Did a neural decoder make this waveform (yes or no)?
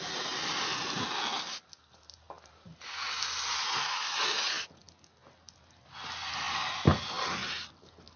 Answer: no